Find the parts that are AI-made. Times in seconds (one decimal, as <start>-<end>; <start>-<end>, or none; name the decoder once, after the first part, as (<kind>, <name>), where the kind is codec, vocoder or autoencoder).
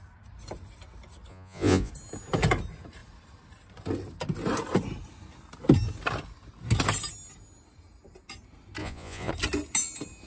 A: 1.3-1.9 (vocoder, Vocos); 8.8-9.3